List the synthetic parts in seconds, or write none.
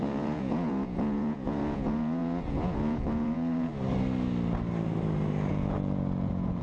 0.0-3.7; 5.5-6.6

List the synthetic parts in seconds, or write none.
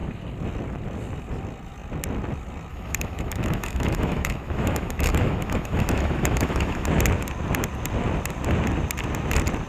2.7-6.9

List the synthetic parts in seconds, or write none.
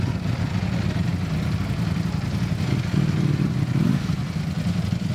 none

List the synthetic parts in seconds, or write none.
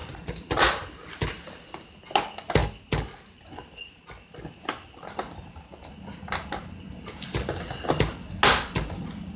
none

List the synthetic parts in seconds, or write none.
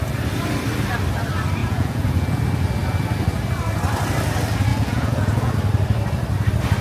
1.6-2.4; 4.7-5.5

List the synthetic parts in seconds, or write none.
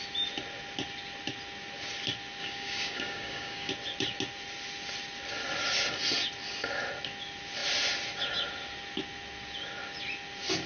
2.4-3.7